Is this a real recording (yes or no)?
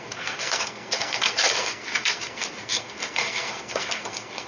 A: no